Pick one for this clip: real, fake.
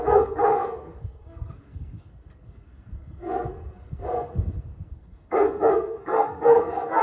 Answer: fake